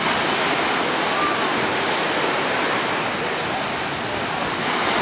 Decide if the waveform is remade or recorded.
recorded